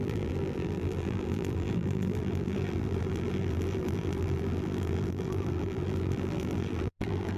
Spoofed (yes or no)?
yes